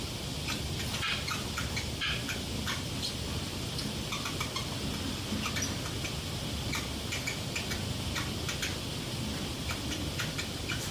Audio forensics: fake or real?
real